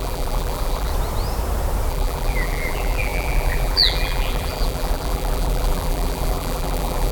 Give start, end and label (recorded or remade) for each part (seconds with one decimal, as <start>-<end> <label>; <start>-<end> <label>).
0.0-0.9 remade; 0.9-1.9 recorded; 1.9-7.1 remade